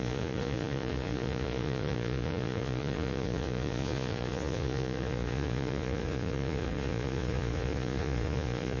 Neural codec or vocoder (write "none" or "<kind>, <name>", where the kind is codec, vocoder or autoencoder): vocoder, Vocos